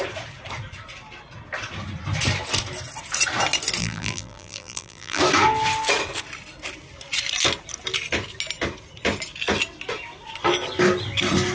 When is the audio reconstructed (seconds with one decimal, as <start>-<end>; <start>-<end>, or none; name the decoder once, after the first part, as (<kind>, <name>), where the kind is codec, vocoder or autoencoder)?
3.8-5.2 (vocoder, BigVGAN v2)